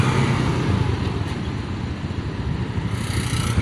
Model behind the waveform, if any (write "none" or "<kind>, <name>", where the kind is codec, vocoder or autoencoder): none